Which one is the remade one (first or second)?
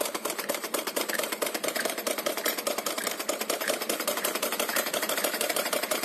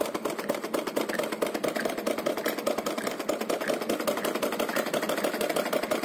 first